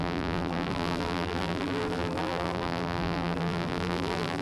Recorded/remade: remade